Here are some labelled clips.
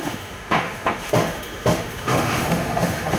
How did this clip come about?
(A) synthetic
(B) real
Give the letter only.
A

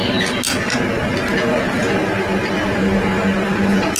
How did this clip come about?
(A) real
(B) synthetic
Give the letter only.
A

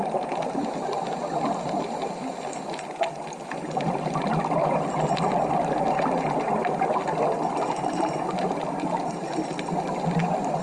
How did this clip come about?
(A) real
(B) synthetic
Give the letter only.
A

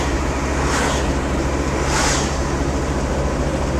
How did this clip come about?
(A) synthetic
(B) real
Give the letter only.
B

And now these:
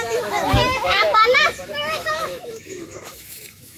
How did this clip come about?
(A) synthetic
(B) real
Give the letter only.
A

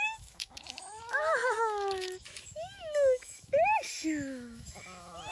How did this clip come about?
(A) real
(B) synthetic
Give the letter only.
B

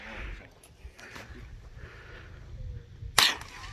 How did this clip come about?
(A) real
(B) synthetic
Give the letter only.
A